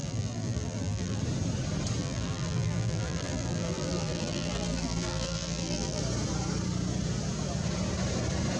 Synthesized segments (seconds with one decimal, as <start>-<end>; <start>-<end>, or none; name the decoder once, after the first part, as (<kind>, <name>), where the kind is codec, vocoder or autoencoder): 0.0-1.2 (vocoder, BigVGAN v2); 2.0-6.0

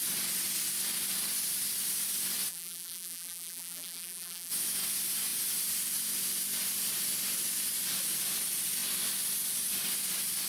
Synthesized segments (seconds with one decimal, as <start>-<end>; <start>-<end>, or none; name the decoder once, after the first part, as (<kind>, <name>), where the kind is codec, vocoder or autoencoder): 2.5-4.5 (vocoder, BigVGAN v2)

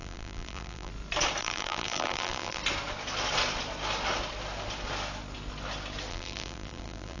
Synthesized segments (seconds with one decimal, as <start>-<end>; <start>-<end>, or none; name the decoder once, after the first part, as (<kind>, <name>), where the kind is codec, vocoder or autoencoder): 0.0-0.9 (vocoder, BigVGAN v2); 1.4-2.6; 6.1-7.2

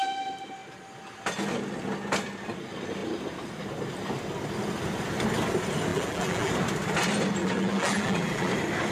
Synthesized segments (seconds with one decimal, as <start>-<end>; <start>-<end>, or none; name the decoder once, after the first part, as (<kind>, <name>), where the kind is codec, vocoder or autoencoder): 5.9-6.5 (vocoder, BigVGAN v2); 7.4-8.5

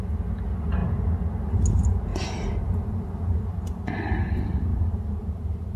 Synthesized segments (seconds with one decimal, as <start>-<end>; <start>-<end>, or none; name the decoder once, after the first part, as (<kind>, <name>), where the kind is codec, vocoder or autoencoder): 2.1-3.4 (vocoder, BigVGAN v2); 4.7-5.8

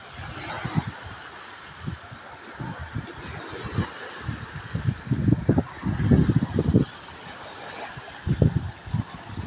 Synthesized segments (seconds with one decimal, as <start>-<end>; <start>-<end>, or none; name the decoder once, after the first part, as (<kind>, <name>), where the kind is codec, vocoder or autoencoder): none

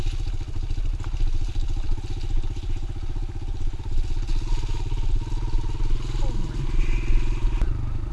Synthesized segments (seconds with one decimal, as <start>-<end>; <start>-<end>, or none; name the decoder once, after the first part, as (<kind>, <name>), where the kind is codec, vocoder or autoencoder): none